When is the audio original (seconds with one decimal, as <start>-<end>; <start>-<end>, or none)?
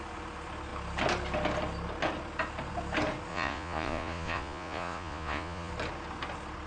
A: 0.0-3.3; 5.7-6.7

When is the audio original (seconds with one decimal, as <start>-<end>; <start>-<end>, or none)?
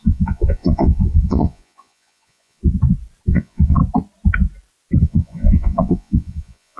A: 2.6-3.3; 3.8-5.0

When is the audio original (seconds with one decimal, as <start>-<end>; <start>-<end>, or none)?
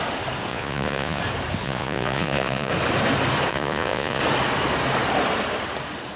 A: 0.0-0.5; 1.2-1.6; 2.7-3.5; 4.2-6.2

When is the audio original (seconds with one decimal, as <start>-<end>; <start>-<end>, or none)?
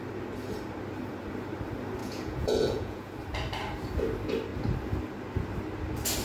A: 0.0-2.0; 3.1-6.2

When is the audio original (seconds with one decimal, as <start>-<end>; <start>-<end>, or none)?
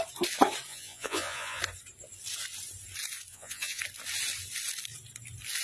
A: 0.0-0.7; 1.6-3.3; 3.8-5.6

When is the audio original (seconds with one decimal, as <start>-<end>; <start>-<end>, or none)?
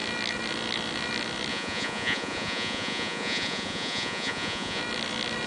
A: 0.0-1.5; 4.8-5.5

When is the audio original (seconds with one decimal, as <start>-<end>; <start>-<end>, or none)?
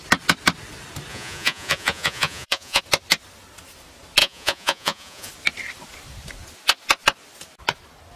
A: 0.0-1.1; 2.8-4.2; 5.3-8.2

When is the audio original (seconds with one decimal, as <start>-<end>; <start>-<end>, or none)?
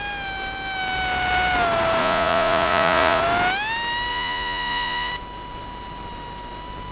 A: 0.0-2.0; 3.2-4.1; 5.1-6.9